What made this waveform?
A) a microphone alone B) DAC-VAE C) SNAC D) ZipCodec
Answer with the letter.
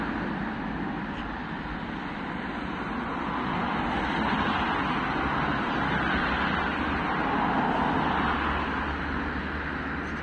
A